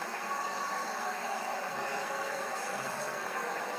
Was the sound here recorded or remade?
remade